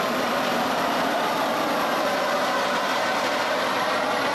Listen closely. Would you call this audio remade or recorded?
remade